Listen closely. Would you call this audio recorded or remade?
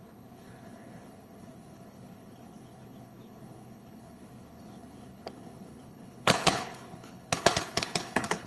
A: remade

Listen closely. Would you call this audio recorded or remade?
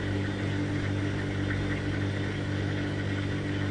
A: recorded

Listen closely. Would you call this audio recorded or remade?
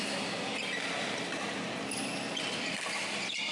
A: recorded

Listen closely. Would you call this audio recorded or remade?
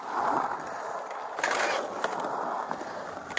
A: recorded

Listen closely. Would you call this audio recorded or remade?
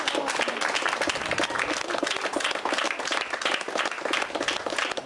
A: recorded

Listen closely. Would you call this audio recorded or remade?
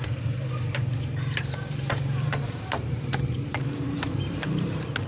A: remade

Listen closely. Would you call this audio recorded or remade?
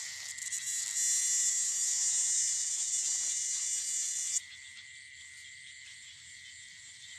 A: recorded